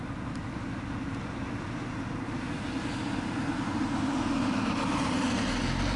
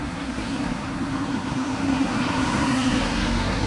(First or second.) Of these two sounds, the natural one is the first